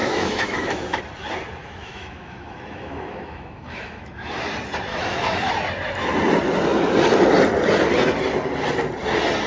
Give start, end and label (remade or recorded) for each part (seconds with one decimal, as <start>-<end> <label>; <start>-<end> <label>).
0.0-1.0 remade; 1.0-1.6 recorded; 1.6-4.4 remade; 4.4-4.9 recorded; 4.9-5.5 remade; 5.5-9.5 recorded